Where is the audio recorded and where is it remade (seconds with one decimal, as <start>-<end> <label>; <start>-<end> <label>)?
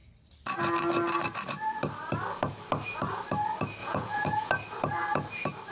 0.0-3.8 recorded; 3.8-4.5 remade; 4.5-5.7 recorded